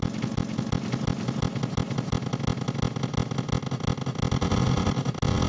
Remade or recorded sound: recorded